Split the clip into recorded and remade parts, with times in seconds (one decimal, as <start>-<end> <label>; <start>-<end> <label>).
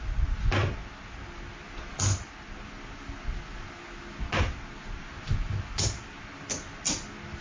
0.0-7.4 recorded